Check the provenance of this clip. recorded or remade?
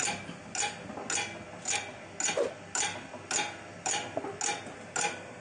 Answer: recorded